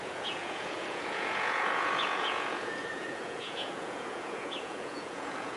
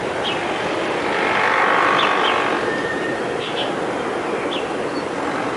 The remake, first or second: first